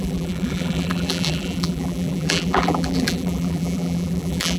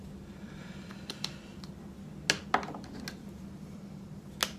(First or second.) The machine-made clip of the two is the first